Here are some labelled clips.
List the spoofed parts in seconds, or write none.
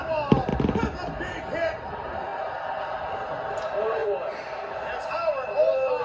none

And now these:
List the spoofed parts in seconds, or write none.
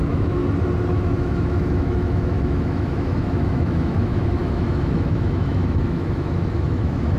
0.0-0.4 (autoencoder, DAC-VAE); 0.9-7.2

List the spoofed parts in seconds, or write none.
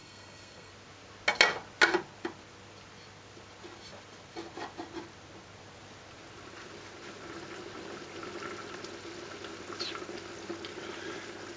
0.0-0.7 (codec, SNAC)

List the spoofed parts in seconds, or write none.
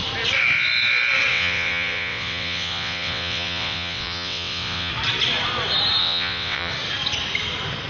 1.3-4.9 (vocoder, WaveNeXt); 6.0-6.7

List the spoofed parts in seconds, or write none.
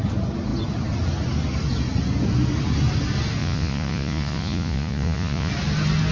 3.4-5.5 (vocoder, Vocos)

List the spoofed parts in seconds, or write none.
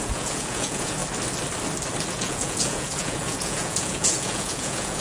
0.0-1.0 (vocoder, Vocos); 2.1-5.0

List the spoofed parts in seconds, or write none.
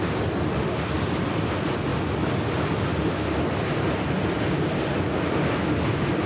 none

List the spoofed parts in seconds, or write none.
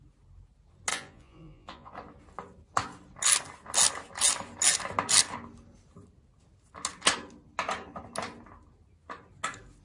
0.9-1.9 (vocoder, Vocos)